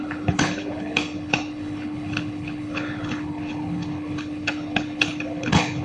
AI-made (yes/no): yes